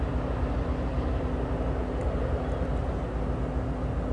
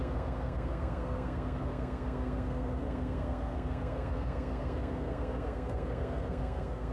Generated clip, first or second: second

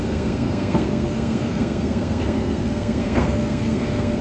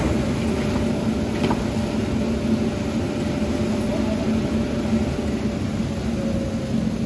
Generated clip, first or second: first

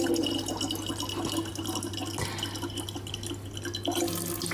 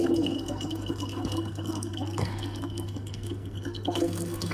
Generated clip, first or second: second